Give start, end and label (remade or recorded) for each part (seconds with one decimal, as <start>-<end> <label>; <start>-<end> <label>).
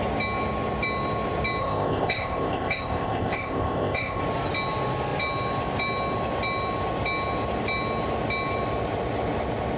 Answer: 0.0-1.6 recorded; 1.6-4.2 remade; 4.2-9.8 recorded